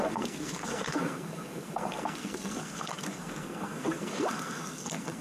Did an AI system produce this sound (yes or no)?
yes